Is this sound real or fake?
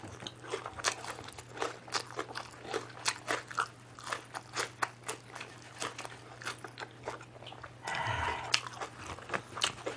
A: real